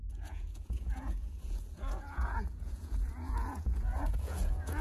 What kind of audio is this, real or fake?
fake